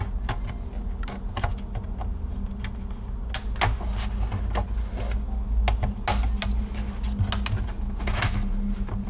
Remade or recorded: recorded